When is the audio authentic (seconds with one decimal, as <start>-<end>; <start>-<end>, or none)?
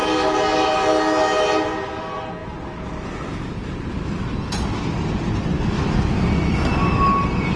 0.0-7.6